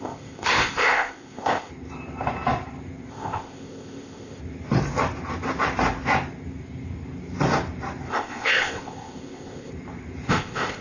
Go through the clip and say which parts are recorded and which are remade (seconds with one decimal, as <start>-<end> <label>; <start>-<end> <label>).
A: 0.0-1.7 remade; 1.7-3.1 recorded; 3.1-4.4 remade; 4.4-8.1 recorded; 8.1-9.7 remade; 9.7-10.3 recorded; 10.3-10.8 remade

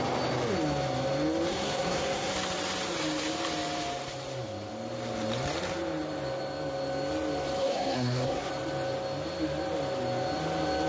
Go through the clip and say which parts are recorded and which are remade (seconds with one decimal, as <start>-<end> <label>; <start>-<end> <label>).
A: 0.0-1.5 recorded; 1.5-2.3 remade; 2.3-7.6 recorded; 7.6-8.5 remade; 8.5-10.9 recorded

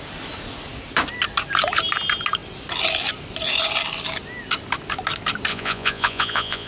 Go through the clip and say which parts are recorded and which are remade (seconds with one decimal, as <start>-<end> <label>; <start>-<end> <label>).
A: 0.0-5.5 recorded; 5.5-6.7 remade

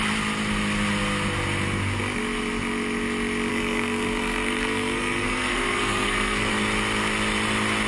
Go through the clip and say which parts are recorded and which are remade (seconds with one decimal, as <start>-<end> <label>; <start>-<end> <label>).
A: 0.0-3.5 recorded; 3.5-6.5 remade; 6.5-7.9 recorded

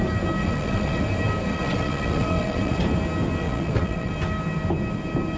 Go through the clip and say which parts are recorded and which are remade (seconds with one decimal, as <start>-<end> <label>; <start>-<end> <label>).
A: 0.0-0.4 recorded; 0.4-1.0 remade; 1.0-1.5 recorded; 1.5-2.8 remade; 2.8-3.4 recorded; 3.4-4.1 remade; 4.1-5.4 recorded